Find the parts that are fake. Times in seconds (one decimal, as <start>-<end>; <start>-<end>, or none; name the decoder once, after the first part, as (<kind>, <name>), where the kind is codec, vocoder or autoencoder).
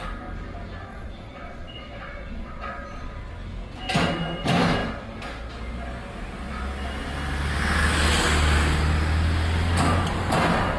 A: 0.9-3.3 (vocoder, Vocos)